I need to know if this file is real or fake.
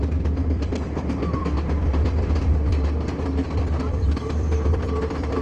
fake